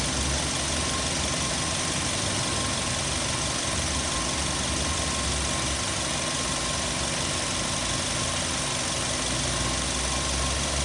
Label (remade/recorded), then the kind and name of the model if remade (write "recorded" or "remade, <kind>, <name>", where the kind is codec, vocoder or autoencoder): recorded